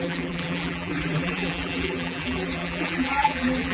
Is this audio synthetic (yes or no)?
yes